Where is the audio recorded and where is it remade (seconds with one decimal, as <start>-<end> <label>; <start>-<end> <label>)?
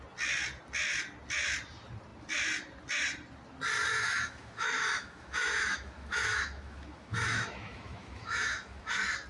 0.0-3.9 recorded; 3.9-8.9 remade; 8.9-9.3 recorded